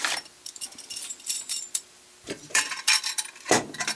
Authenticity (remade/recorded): remade